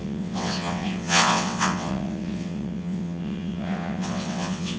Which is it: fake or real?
fake